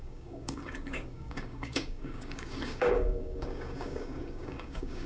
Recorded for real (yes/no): no